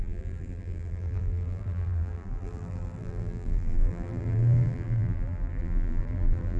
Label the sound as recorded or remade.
remade